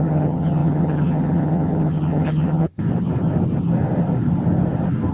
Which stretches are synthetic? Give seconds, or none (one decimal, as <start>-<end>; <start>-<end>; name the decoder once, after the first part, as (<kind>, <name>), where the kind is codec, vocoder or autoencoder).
0.0-2.8 (vocoder, HiFi-GAN)